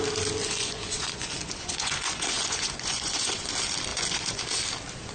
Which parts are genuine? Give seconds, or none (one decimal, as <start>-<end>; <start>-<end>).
0.0-0.4; 3.5-3.9; 4.4-5.1